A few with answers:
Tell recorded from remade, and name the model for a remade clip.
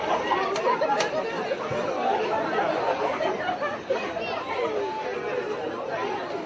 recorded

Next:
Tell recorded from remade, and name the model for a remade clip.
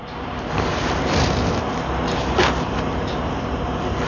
recorded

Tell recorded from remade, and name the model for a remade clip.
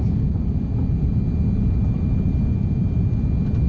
recorded